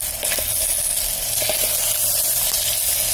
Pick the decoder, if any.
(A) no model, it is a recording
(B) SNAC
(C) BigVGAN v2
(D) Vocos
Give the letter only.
A